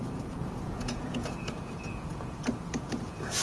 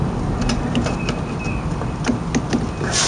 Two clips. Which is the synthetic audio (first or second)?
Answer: first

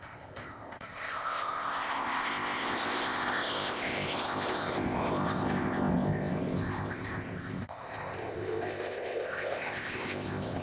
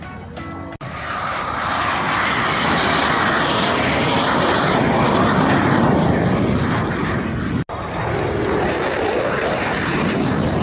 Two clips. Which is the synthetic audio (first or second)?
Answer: first